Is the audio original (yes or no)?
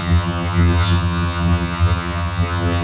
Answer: no